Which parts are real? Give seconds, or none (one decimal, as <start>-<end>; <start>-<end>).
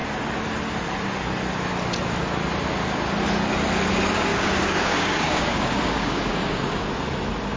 0.0-4.3; 6.9-7.6